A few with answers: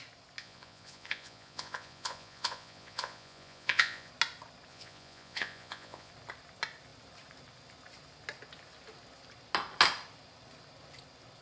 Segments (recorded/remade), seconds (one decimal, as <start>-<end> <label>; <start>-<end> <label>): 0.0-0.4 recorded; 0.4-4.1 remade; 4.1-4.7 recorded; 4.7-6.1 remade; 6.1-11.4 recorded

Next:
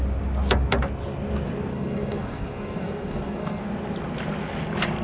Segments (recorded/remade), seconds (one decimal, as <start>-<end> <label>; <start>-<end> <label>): 0.0-1.7 recorded; 1.7-3.6 remade; 3.6-5.0 recorded

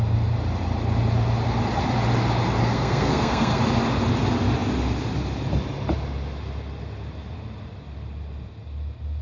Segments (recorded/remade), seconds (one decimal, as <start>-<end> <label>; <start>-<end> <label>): 0.0-2.6 recorded; 2.6-3.6 remade; 3.6-9.2 recorded